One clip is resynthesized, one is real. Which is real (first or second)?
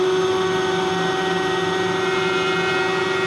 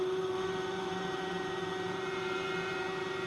first